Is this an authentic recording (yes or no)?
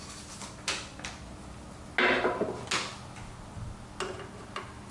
yes